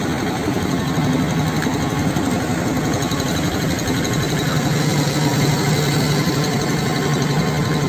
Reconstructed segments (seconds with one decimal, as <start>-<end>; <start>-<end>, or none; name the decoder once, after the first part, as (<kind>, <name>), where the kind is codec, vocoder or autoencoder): none